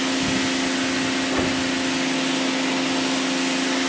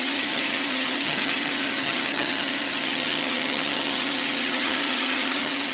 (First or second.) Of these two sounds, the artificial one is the second